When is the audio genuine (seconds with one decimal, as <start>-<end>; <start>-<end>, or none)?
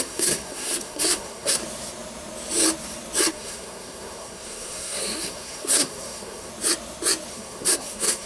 1.6-3.3; 6.5-7.3